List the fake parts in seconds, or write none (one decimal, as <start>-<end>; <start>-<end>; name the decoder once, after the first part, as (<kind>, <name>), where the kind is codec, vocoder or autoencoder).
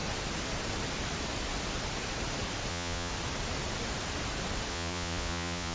2.7-3.1 (vocoder, Vocos); 4.7-5.7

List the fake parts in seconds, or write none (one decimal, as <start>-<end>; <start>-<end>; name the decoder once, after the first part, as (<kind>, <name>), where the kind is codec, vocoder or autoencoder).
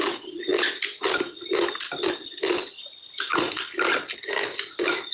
none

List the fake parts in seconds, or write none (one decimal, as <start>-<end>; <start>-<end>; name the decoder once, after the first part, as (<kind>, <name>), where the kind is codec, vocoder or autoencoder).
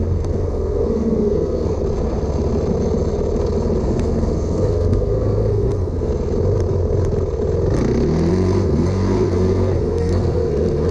0.0-1.8 (codec, SNAC); 3.8-6.1; 8.3-10.9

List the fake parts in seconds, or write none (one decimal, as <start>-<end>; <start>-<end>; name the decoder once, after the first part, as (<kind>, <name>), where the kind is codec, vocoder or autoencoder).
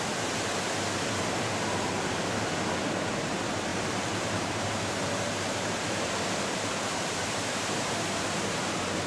3.7-8.6 (vocoder, BigVGAN v2)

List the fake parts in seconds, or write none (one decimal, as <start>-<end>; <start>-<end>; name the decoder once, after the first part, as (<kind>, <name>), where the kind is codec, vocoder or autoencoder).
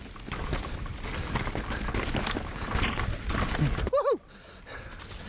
none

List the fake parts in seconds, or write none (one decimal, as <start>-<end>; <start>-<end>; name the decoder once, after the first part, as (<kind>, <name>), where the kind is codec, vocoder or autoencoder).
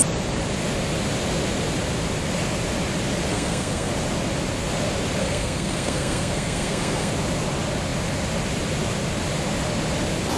3.3-3.9 (codec, SNAC); 5.2-7.1